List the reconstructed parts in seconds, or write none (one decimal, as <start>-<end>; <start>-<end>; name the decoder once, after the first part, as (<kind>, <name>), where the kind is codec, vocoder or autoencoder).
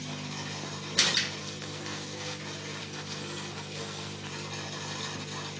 1.4-2.4 (codec, SNAC); 2.8-4.3